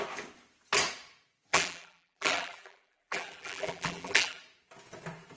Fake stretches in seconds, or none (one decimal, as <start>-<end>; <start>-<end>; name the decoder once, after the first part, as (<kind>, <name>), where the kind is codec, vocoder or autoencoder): 1.5-4.4 (vocoder, BigVGAN v2)